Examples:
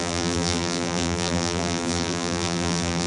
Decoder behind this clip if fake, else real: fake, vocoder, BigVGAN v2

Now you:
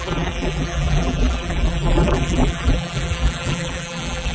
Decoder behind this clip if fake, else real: fake, vocoder, BigVGAN v2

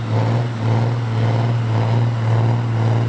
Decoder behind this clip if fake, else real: real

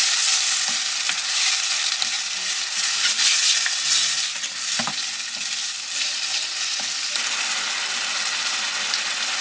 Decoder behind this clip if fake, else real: real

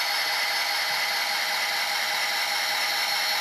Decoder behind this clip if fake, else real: real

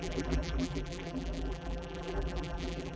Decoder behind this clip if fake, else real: fake, vocoder, BigVGAN v2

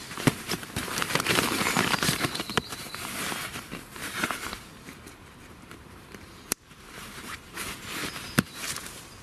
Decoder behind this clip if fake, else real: fake, vocoder, BigVGAN v2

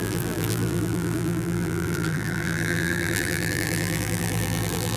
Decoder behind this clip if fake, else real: fake, vocoder, BigVGAN v2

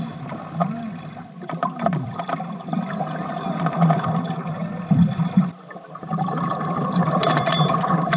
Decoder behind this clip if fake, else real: fake, vocoder, BigVGAN v2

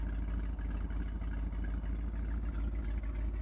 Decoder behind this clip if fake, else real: real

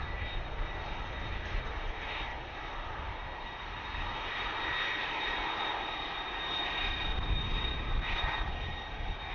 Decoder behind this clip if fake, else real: real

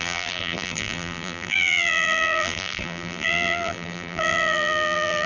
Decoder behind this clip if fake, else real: fake, vocoder, BigVGAN v2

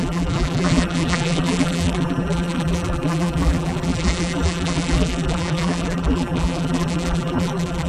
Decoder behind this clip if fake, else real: fake, vocoder, BigVGAN v2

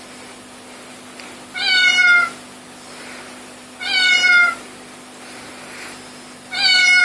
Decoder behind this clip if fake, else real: real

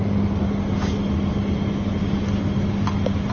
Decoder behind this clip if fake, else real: real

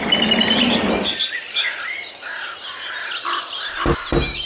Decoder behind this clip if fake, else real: real